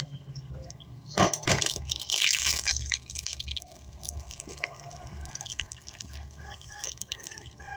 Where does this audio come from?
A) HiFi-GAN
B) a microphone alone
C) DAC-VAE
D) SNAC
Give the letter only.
D